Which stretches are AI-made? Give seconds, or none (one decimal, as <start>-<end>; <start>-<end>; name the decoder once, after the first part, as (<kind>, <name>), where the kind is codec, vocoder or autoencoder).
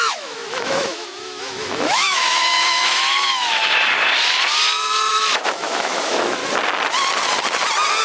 0.0-3.6 (autoencoder, DAC-VAE); 5.1-6.4